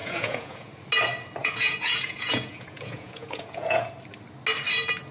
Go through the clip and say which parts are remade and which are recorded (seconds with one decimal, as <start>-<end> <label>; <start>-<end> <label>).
0.0-0.7 remade; 0.7-1.4 recorded; 1.4-3.9 remade; 3.9-5.1 recorded